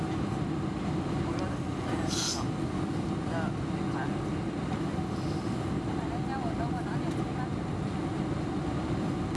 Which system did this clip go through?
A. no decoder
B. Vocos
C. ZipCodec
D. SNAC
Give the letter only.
A